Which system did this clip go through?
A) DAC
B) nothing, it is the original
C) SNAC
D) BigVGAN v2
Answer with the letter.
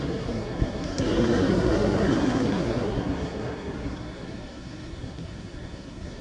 C